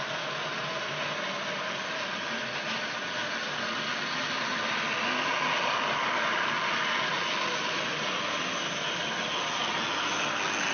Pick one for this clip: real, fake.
real